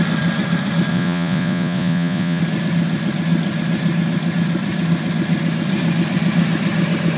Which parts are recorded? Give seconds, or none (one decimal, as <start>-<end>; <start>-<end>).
0.0-0.9; 2.4-7.2

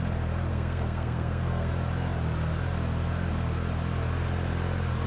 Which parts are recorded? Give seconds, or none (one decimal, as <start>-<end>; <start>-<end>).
0.0-0.5; 1.7-5.1

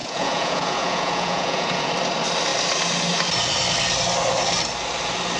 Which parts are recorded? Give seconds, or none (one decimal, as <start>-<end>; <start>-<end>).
1.9-5.4

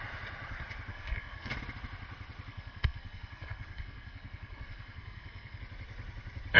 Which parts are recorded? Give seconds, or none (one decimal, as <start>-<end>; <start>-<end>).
0.0-0.9; 1.5-2.5; 5.6-6.6

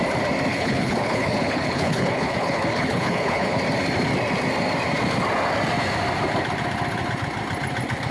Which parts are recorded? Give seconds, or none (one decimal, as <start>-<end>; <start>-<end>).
0.0-0.5; 3.6-8.1

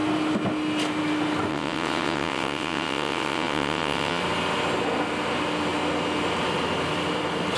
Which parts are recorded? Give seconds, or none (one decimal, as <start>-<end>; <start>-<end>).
0.0-1.5; 4.2-7.6

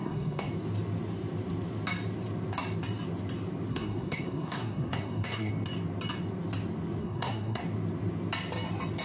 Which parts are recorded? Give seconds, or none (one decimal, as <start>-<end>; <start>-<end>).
0.5-3.7; 5.5-7.0; 7.6-9.0